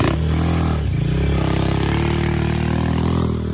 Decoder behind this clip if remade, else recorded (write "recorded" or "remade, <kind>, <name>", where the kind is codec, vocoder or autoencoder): recorded